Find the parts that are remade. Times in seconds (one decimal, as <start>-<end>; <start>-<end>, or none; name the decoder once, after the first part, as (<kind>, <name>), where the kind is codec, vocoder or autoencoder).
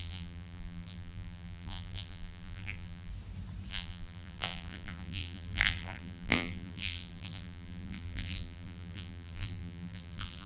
0.0-3.1 (vocoder, BigVGAN v2); 3.7-10.5